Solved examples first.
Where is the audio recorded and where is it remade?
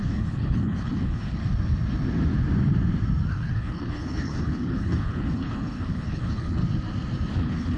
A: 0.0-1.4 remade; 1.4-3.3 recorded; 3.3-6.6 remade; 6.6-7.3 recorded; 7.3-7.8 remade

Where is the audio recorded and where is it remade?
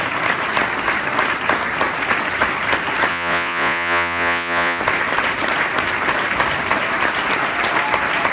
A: 0.0-3.1 recorded; 3.1-4.8 remade; 4.8-8.3 recorded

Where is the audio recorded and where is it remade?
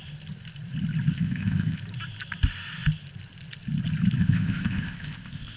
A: 0.0-1.1 recorded; 1.1-1.8 remade; 1.8-4.2 recorded; 4.2-5.6 remade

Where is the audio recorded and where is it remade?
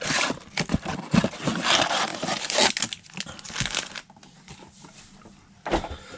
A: 0.0-2.1 recorded; 2.1-2.7 remade; 2.7-6.2 recorded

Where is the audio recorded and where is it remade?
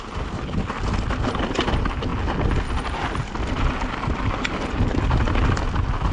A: 0.0-6.1 recorded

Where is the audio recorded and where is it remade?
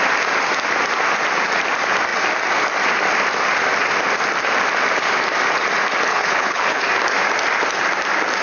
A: 0.0-6.1 recorded; 6.1-6.8 remade; 6.8-8.4 recorded